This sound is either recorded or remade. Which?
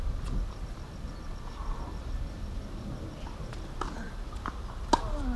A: recorded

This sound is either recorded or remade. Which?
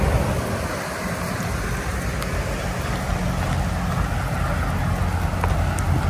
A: recorded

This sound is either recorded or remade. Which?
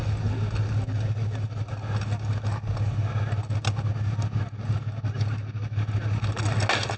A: recorded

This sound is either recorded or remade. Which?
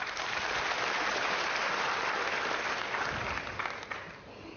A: recorded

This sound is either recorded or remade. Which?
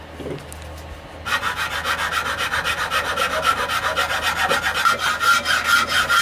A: recorded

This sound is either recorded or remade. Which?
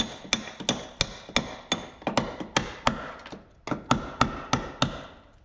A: recorded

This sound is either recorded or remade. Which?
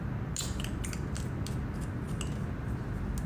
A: recorded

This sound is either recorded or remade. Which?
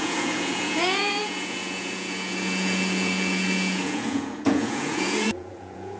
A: remade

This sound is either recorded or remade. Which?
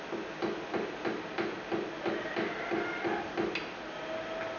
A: recorded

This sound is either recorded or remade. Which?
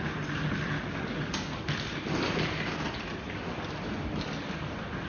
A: recorded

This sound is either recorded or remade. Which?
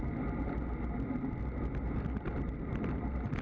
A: recorded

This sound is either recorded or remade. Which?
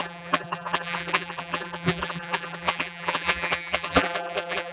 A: remade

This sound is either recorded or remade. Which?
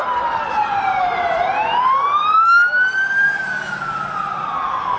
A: recorded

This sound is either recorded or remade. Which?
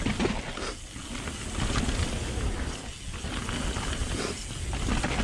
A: recorded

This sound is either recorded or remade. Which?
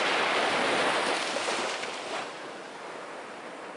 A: recorded